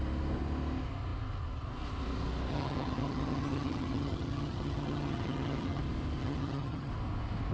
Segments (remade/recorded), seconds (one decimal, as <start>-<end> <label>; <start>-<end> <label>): 0.0-2.5 recorded; 2.5-5.8 remade; 5.8-6.2 recorded; 6.2-6.9 remade; 6.9-7.5 recorded